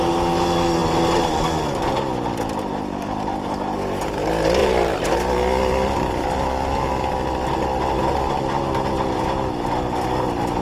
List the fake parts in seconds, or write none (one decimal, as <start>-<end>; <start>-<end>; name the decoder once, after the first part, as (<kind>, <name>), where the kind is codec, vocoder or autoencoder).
4.6-5.1 (vocoder, BigVGAN v2)